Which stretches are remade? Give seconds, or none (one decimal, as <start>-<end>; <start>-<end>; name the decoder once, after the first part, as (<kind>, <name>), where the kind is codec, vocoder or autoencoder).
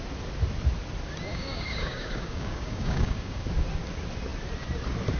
1.3-3.4 (codec, DAC)